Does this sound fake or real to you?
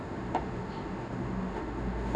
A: fake